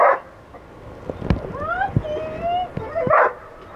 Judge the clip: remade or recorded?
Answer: recorded